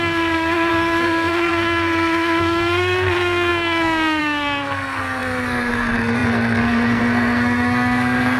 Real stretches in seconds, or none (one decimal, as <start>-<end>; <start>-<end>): none